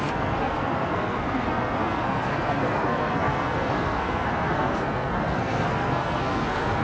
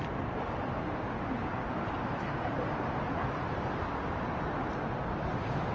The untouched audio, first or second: second